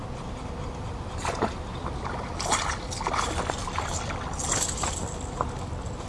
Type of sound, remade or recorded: recorded